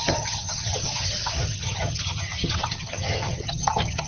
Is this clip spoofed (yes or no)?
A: yes